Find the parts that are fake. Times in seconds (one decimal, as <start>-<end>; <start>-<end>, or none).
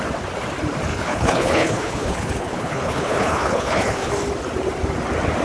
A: 0.9-4.1